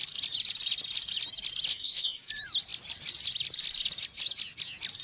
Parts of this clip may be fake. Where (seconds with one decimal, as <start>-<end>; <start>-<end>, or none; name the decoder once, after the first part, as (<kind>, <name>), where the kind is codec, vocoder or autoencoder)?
1.7-2.3 (codec, DAC)